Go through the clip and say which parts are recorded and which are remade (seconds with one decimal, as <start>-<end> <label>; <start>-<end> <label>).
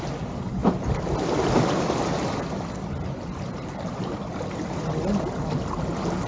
0.0-6.3 recorded